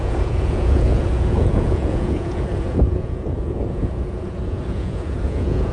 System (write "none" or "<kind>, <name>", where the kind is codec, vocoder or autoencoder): vocoder, Vocos